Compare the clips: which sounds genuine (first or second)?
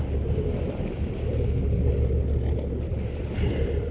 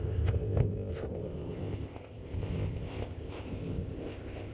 first